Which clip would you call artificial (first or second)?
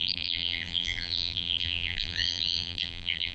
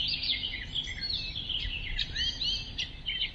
first